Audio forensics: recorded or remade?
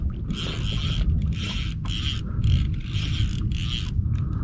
recorded